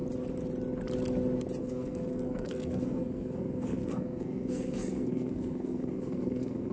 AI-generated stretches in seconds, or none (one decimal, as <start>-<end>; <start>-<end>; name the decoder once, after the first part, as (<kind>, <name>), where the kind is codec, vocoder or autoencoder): 1.6-6.7 (codec, SNAC)